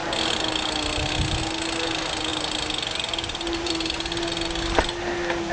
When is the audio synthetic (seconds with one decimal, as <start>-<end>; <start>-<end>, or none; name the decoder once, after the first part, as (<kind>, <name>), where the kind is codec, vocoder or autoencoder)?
none